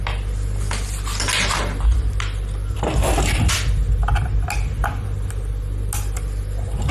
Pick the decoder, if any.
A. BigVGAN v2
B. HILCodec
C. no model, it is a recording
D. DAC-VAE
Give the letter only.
C